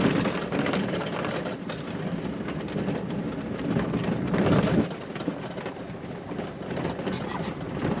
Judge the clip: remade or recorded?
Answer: recorded